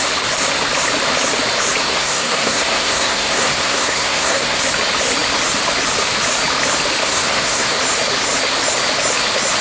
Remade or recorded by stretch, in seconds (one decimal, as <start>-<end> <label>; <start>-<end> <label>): 0.0-1.8 recorded; 1.8-4.6 remade; 4.6-7.0 recorded; 7.0-7.8 remade; 7.8-9.6 recorded